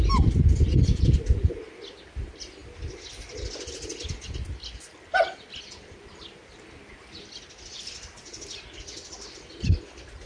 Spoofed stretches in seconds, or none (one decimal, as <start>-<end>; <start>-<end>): none

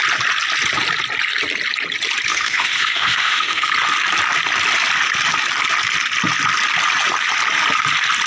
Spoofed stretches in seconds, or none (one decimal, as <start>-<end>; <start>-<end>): 2.3-3.7

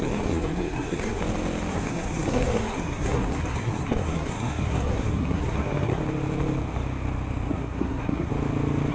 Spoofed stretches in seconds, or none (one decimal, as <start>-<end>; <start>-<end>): 0.0-1.2; 1.7-6.0; 7.5-8.3

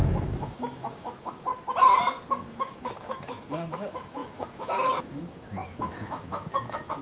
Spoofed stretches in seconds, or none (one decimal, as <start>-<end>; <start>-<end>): 0.0-1.5; 2.4-7.0

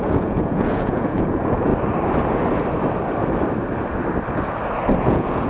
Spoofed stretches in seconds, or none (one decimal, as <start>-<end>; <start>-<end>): 0.0-1.7; 5.0-5.5

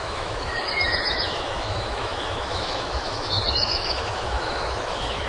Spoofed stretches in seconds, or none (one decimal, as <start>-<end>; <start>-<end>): 0.0-5.3

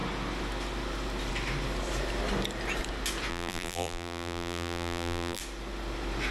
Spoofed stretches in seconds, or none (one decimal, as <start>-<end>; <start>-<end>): 3.3-5.4